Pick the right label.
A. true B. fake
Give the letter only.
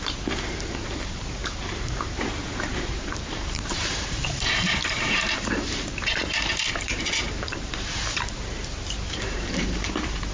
B